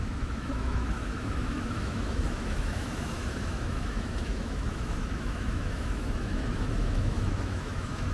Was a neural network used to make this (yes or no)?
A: yes